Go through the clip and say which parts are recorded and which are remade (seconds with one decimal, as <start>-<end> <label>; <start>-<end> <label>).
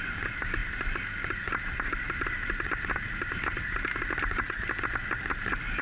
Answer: 0.0-5.8 recorded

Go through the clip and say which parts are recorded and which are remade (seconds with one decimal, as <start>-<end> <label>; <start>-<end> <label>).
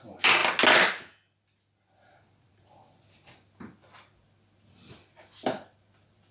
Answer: 0.0-6.3 recorded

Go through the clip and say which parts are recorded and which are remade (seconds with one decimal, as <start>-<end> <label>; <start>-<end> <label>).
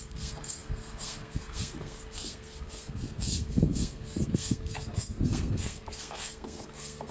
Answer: 0.0-7.1 remade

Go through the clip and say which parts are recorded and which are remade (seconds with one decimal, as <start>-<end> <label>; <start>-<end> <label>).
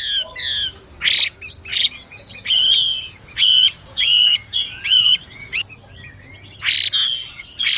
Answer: 0.0-1.7 recorded; 1.7-5.7 remade; 5.7-7.8 recorded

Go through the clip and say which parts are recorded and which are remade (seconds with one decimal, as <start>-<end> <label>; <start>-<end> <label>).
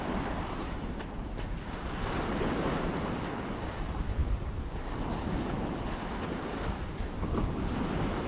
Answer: 0.0-8.3 recorded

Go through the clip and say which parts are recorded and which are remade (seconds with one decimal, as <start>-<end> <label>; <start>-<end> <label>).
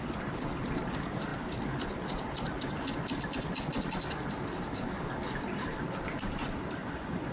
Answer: 0.0-6.8 recorded; 6.8-7.3 remade